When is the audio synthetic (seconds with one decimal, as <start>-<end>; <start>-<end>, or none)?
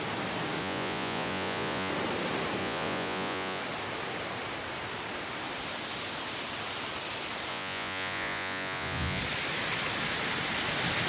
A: 0.6-1.9; 2.6-3.6; 7.5-9.2